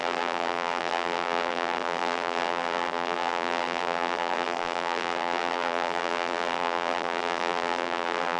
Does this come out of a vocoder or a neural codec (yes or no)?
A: yes